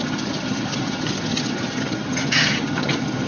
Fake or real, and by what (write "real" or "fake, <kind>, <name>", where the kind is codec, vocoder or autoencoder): fake, vocoder, HiFi-GAN